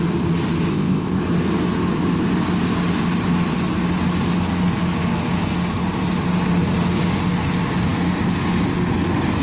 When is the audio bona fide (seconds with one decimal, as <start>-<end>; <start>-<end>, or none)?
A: 0.0-0.7; 1.2-9.4